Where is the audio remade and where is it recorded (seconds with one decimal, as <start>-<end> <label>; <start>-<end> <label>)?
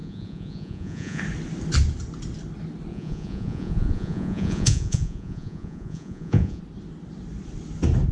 0.0-1.2 remade; 1.2-2.9 recorded; 2.9-6.6 remade; 6.6-8.1 recorded